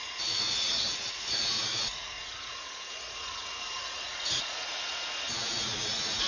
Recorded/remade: remade